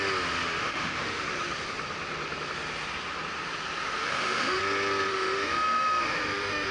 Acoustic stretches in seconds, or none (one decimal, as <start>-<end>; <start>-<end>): 0.0-0.6; 1.2-4.0; 4.6-5.1